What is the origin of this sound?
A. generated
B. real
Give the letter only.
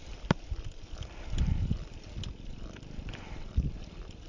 A